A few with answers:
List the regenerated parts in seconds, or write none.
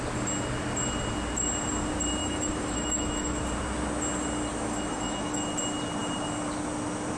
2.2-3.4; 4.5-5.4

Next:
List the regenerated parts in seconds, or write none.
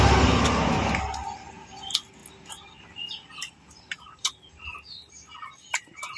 none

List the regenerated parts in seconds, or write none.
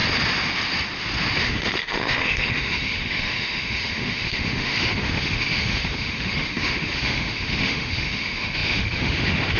1.4-9.6